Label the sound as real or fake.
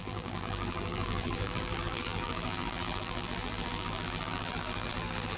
fake